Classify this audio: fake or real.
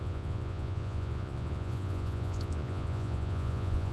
fake